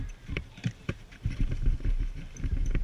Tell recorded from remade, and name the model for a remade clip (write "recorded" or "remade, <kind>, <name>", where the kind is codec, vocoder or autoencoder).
remade, vocoder, BigVGAN v2